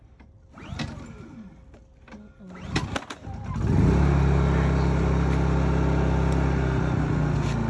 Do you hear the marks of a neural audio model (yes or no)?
no